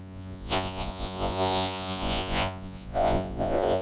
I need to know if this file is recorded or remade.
remade